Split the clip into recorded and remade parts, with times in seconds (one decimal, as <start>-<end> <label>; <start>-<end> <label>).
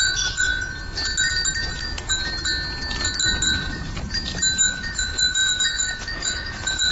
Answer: 0.0-0.5 remade; 0.5-4.6 recorded; 4.6-6.9 remade